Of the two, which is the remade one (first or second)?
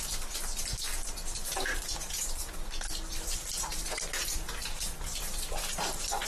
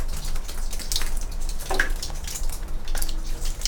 first